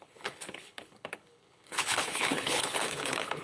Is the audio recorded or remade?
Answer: remade